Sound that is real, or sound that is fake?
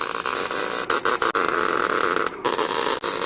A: real